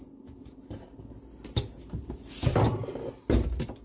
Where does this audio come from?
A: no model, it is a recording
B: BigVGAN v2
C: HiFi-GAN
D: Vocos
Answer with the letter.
A